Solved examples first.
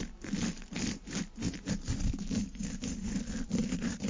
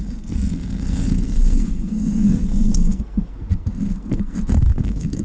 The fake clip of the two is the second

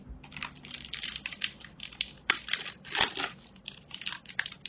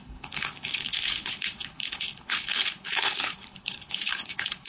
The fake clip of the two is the second